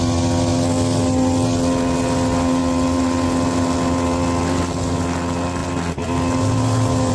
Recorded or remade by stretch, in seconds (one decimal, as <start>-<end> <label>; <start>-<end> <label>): 0.0-7.1 recorded